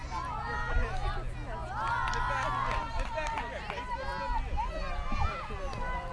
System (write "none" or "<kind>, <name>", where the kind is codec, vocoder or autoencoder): none